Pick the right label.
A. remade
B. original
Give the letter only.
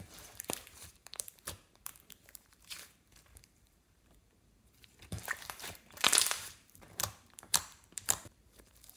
A